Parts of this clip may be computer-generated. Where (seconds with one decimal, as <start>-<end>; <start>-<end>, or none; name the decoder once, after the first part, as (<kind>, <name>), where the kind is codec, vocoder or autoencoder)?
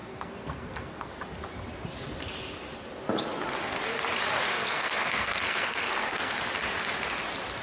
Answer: 0.0-1.1 (codec, SNAC); 4.5-6.3